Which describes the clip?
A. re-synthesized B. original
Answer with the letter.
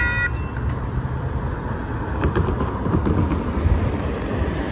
B